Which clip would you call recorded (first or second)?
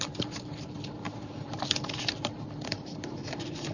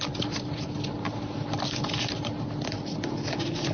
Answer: second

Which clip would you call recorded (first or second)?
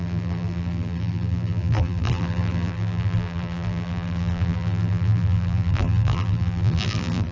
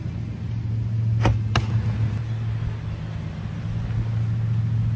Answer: second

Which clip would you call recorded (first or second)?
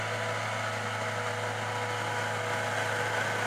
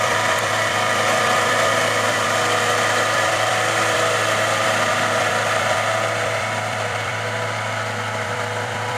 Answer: first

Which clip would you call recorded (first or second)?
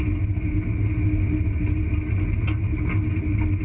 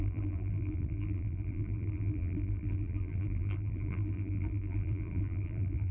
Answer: first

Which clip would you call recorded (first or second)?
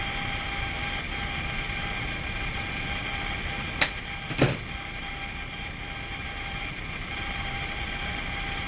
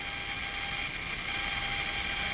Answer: second